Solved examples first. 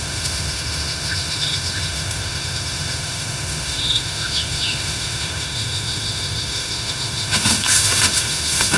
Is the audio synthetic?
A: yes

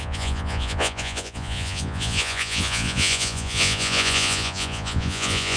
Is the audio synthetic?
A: yes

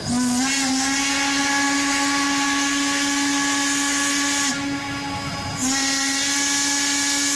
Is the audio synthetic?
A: no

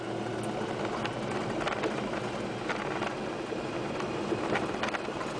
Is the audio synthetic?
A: no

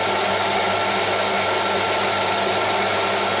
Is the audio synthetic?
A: no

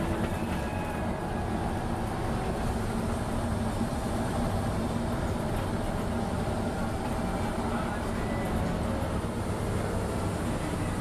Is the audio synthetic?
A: no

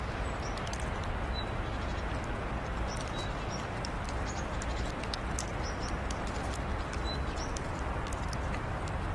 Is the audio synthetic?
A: yes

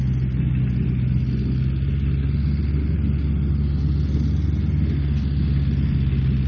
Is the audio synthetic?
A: no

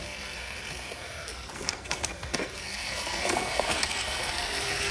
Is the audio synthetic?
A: yes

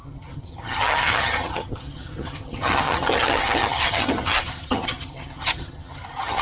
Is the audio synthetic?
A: yes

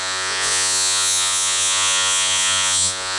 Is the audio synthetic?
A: yes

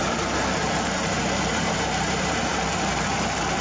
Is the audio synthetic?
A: yes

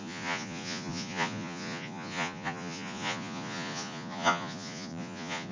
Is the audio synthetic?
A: yes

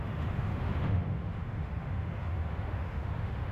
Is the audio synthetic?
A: yes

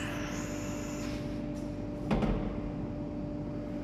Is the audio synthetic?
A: no